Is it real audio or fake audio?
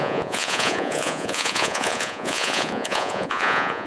fake